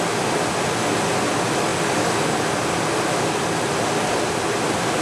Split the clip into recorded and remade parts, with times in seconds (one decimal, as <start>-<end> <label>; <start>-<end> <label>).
0.0-5.0 recorded

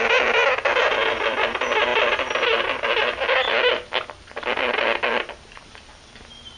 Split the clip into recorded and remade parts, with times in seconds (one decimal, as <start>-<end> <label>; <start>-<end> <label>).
0.0-6.6 recorded

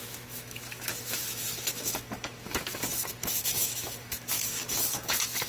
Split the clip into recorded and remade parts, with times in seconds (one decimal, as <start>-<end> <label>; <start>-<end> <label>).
0.0-5.5 remade

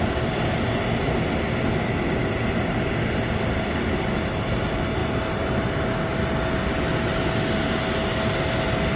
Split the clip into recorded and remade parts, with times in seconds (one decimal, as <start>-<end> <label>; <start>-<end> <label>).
0.0-9.0 recorded

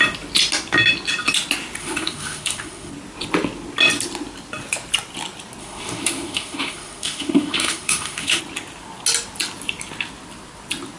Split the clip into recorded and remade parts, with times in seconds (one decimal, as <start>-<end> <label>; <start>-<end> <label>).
0.0-1.8 recorded; 1.8-2.9 remade; 2.9-5.6 recorded; 5.6-8.4 remade; 8.4-11.0 recorded

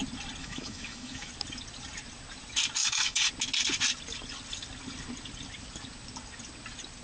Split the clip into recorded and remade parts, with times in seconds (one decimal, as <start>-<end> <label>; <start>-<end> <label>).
0.0-0.4 recorded; 0.4-1.3 remade; 1.3-2.8 recorded; 2.8-3.3 remade; 3.3-7.0 recorded

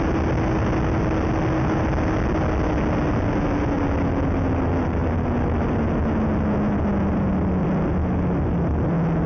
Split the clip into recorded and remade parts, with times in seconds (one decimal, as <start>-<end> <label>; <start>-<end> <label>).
0.0-9.3 recorded

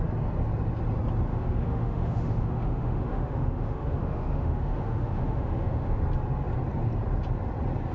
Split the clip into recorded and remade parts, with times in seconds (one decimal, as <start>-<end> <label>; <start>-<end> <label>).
0.0-1.3 recorded; 1.3-6.0 remade; 6.0-7.9 recorded